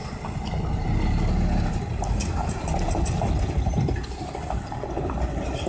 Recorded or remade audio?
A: recorded